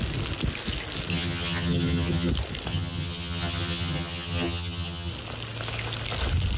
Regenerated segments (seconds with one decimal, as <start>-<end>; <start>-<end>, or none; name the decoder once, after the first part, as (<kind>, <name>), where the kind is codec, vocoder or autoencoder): 1.1-2.3 (vocoder, HiFi-GAN); 2.7-5.1

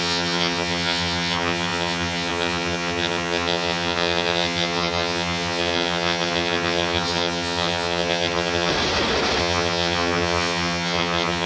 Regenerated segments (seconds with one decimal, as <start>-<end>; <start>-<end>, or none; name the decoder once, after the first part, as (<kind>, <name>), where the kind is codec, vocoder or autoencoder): 0.0-8.7 (vocoder, HiFi-GAN); 9.4-11.5

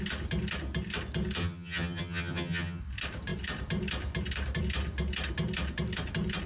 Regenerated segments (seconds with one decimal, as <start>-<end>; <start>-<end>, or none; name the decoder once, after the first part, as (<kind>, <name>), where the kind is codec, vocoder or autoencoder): 1.4-2.8 (vocoder, HiFi-GAN)

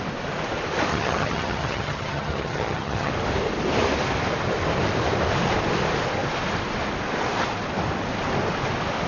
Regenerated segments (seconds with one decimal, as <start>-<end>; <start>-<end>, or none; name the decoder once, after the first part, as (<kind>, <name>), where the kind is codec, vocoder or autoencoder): 0.9-3.1 (vocoder, HiFi-GAN)

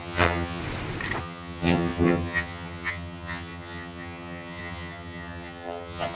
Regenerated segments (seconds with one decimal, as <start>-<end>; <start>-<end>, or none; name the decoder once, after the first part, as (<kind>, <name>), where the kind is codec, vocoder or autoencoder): 0.0-0.6 (vocoder, HiFi-GAN); 1.2-6.2

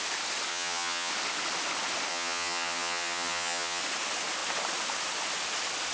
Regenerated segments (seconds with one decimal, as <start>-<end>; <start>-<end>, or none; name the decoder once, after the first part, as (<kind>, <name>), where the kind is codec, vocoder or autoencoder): 0.5-1.1 (vocoder, HiFi-GAN); 2.1-3.8

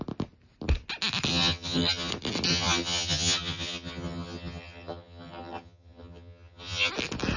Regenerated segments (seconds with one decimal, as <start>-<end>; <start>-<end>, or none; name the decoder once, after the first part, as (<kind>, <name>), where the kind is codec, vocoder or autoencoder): 1.3-2.1 (vocoder, HiFi-GAN); 2.5-6.9

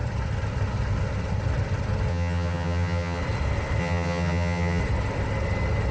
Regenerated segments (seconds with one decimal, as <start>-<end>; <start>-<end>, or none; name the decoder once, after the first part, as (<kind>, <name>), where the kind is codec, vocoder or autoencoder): 2.1-3.2 (vocoder, HiFi-GAN); 3.8-4.8